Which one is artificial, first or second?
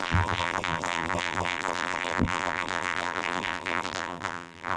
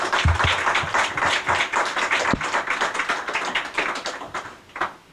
first